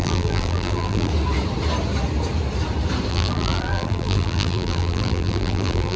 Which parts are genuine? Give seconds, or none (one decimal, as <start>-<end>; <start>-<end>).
1.1-3.1